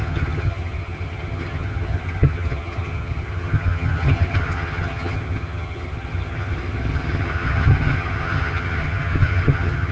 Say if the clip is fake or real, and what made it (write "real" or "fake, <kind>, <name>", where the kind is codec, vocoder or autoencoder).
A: fake, vocoder, HiFi-GAN